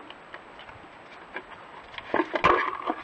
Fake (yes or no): no